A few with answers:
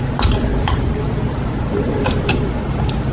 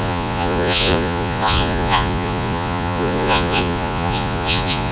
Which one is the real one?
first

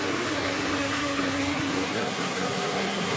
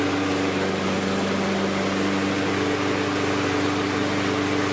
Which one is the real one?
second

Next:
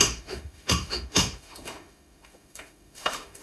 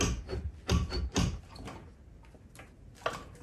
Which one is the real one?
second